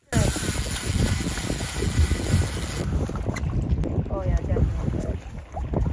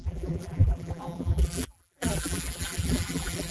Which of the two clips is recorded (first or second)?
first